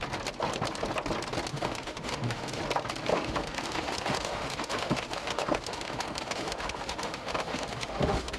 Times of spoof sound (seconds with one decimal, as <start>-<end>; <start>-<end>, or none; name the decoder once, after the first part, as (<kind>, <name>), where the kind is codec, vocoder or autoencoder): 1.5-2.6 (autoencoder, DAC-VAE); 3.1-8.4